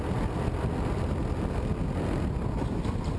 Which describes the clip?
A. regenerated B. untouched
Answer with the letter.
B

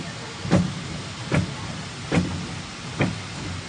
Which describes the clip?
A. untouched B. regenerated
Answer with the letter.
A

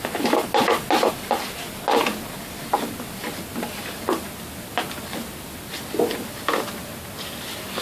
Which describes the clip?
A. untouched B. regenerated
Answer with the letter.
A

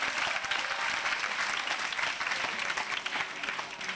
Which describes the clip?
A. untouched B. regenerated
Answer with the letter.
A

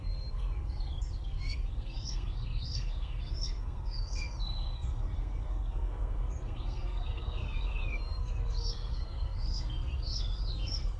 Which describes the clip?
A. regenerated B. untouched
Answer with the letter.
A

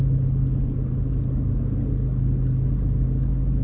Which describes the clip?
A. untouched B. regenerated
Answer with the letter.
A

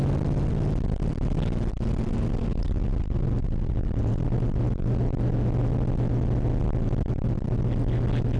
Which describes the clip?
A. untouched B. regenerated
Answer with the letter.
A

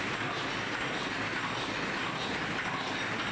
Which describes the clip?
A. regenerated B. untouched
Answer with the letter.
B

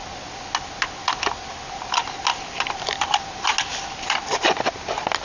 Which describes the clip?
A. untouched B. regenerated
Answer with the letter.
A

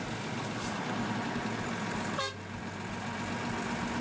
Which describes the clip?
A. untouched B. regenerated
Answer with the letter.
A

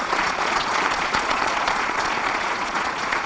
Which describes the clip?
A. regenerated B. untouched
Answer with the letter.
A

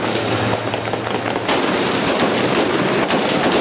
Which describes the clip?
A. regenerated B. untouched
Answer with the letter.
B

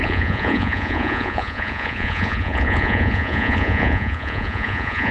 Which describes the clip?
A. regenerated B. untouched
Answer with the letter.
A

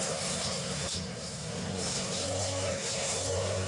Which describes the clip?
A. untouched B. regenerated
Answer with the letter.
B